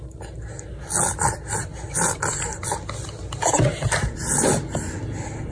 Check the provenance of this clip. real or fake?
real